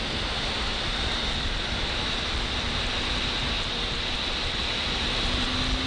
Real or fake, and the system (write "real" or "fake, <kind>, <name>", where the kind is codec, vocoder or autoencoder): real